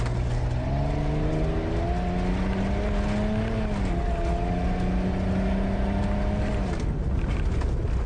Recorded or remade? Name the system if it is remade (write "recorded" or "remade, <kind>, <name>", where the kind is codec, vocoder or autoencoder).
recorded